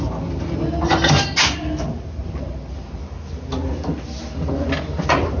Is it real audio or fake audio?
real